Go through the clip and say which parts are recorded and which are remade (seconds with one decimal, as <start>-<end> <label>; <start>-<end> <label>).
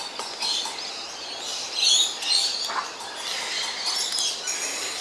0.0-5.0 recorded